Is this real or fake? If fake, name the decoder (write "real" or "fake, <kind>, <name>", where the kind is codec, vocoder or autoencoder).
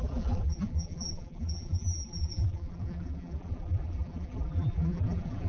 fake, vocoder, BigVGAN v2